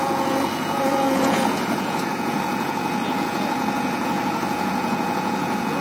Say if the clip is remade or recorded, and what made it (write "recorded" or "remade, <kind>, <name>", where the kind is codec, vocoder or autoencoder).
remade, vocoder, Vocos